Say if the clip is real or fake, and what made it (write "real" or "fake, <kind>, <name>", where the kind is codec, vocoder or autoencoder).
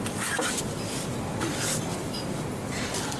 real